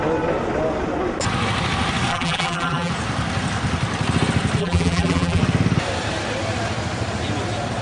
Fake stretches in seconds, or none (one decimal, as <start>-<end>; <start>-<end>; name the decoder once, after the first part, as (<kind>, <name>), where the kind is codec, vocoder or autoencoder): 2.1-2.9 (vocoder, BigVGAN v2); 4.6-5.4